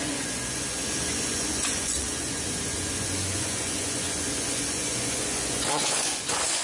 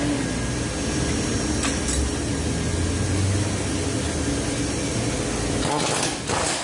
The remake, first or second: first